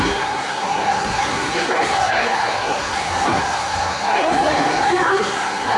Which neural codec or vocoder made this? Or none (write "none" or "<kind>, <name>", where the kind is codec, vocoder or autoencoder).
codec, SNAC